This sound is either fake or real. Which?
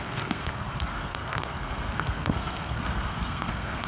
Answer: fake